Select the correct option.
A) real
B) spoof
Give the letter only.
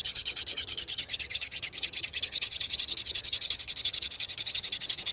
B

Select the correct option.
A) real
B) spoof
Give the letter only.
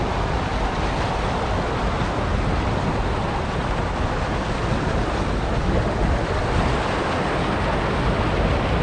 A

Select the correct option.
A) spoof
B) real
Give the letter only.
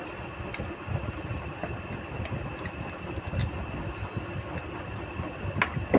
B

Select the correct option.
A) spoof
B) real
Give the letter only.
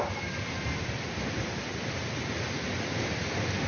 B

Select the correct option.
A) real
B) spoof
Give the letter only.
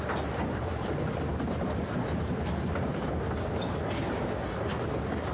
A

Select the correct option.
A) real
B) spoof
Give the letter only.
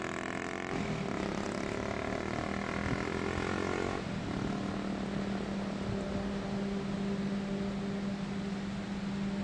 A